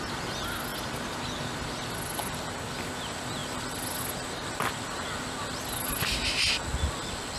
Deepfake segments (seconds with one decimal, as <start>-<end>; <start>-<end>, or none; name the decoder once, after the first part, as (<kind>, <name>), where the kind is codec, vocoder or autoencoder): none